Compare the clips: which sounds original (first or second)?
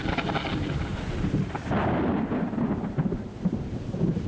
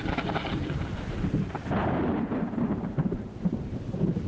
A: first